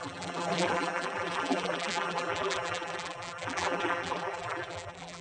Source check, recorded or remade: remade